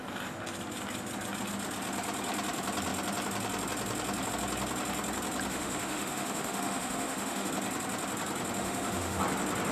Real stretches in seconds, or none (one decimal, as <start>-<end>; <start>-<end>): 0.0-5.5; 7.5-8.6; 9.2-9.7